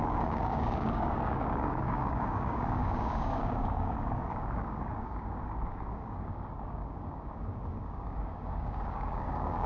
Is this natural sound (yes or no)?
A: no